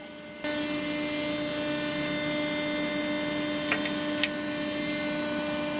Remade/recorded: recorded